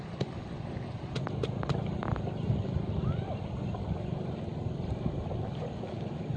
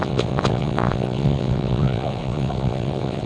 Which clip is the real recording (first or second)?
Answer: first